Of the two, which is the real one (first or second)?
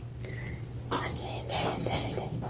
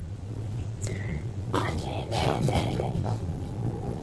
first